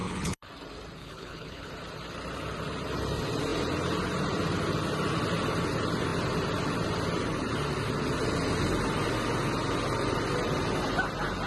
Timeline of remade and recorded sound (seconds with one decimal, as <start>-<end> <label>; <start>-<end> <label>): 0.0-0.5 remade; 0.5-1.0 recorded; 1.0-1.7 remade; 1.7-11.5 recorded